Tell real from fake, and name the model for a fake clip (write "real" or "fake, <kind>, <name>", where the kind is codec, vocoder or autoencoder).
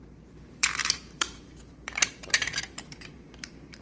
fake, vocoder, BigVGAN v2